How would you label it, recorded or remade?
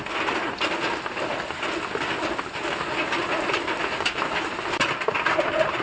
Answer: recorded